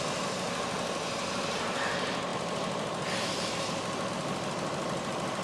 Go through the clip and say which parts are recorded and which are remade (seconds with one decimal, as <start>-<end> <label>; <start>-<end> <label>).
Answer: 0.0-5.4 remade